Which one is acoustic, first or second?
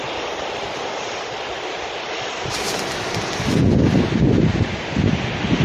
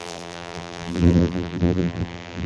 first